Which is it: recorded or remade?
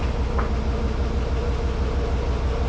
recorded